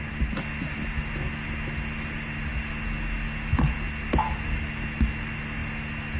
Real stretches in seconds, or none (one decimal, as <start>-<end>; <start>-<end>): 0.0-6.2